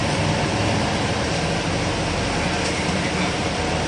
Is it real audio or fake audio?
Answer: fake